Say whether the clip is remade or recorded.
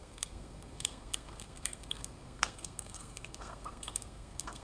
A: remade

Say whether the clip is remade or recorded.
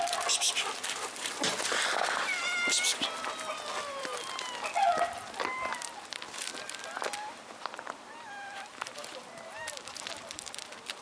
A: remade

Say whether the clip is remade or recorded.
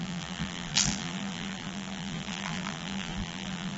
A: remade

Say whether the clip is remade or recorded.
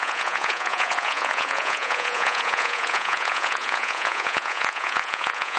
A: remade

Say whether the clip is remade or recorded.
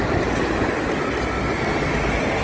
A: recorded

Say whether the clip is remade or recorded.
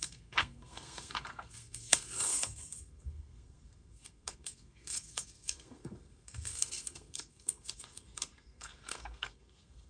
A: remade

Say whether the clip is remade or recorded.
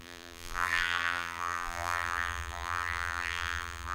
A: remade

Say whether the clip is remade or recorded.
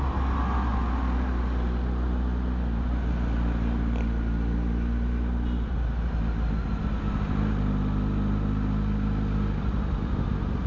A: recorded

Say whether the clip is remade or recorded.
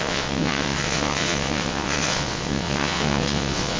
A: remade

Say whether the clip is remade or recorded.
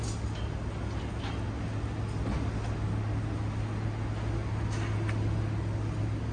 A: recorded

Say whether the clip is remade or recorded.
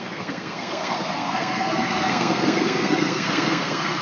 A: remade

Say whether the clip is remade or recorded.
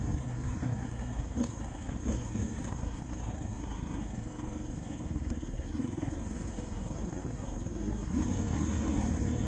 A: remade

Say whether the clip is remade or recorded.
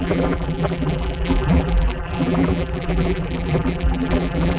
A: remade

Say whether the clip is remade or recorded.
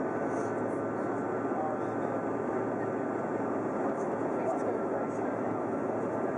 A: recorded